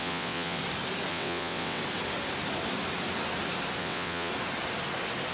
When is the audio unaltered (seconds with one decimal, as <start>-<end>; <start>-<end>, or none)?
0.6-1.1; 1.8-3.8; 4.3-5.3